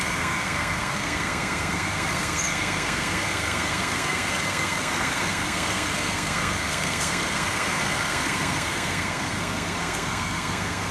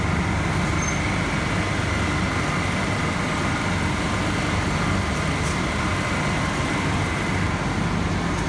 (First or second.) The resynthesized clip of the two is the first